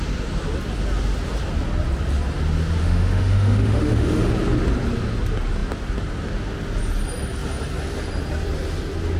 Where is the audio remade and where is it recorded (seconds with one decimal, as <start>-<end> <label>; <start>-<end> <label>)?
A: 0.0-2.8 recorded; 2.8-4.3 remade; 4.3-9.2 recorded